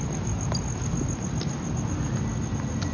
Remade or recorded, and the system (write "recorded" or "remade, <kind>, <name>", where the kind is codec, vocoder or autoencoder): recorded